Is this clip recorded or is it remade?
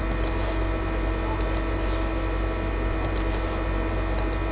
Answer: recorded